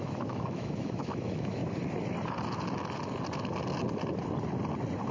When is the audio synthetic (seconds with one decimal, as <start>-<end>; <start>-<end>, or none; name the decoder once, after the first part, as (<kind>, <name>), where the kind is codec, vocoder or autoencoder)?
0.0-1.6 (autoencoder, DAC-VAE)